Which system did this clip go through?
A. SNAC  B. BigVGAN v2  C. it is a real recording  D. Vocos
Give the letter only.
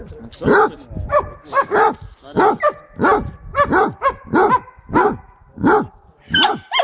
C